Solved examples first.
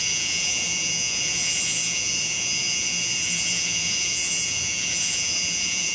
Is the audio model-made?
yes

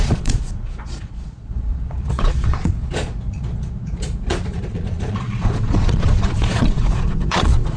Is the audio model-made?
yes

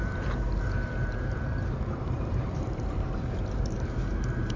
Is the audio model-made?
yes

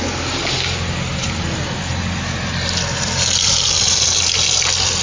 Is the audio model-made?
no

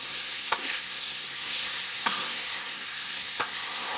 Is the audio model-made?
yes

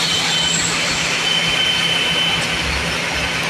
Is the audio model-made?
no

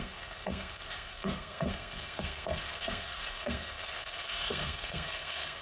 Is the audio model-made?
yes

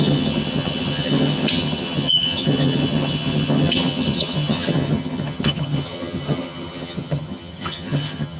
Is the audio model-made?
yes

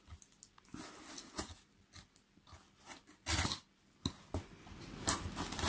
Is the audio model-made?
no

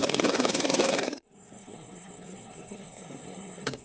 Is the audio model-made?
yes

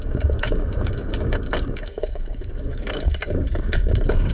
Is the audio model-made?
yes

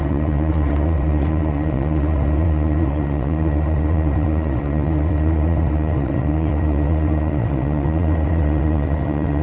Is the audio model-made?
yes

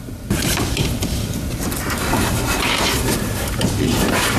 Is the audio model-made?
yes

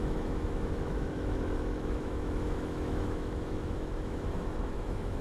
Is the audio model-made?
yes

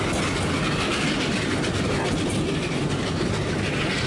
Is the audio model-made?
no